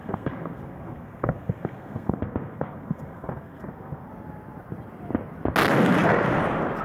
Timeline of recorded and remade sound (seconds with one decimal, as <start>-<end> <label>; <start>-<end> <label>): 0.0-4.1 remade; 4.1-6.8 recorded